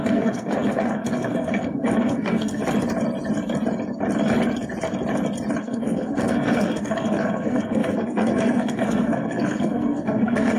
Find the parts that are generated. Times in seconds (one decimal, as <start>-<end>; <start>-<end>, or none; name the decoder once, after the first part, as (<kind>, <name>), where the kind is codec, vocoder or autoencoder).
0.0-2.6 (codec, SNAC); 5.6-10.6